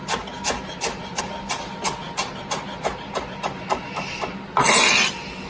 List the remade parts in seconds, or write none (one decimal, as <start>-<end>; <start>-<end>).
none